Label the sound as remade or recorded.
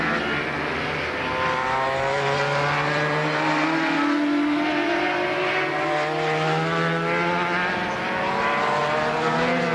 remade